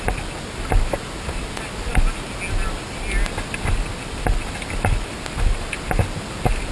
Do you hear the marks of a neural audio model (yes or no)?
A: no